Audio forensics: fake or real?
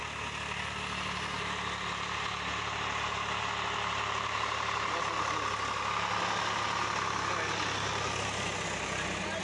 real